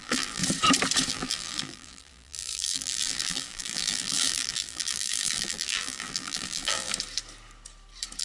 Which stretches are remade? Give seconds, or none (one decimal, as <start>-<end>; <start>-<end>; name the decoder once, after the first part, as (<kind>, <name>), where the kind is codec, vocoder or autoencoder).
0.0-0.4 (vocoder, BigVGAN v2); 1.1-6.9

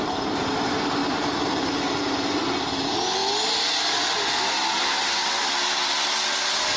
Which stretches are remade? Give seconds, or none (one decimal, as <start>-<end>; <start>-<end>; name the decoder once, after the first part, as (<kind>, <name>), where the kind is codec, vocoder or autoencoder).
1.0-1.9 (vocoder, BigVGAN v2); 5.2-5.9

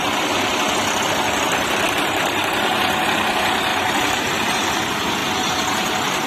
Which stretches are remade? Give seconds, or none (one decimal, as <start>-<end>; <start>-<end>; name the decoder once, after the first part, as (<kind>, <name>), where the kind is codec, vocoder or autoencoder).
3.7-4.2 (vocoder, BigVGAN v2); 5.2-6.3

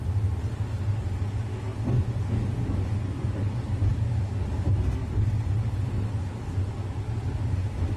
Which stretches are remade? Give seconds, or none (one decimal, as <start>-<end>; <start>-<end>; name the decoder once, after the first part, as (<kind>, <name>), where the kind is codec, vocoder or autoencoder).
none

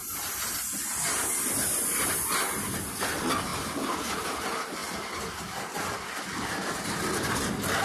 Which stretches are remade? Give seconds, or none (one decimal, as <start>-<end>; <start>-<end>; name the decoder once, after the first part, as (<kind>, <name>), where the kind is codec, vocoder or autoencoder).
none

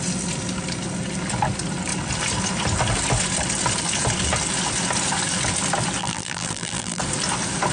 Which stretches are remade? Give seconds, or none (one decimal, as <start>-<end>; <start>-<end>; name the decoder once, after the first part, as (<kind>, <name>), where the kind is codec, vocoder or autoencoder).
6.0-7.0 (vocoder, BigVGAN v2)

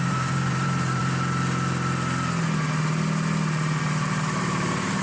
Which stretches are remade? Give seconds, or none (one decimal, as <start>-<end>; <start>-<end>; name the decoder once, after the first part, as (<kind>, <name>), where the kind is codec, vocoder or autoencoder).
0.0-1.0 (vocoder, BigVGAN v2); 3.8-5.0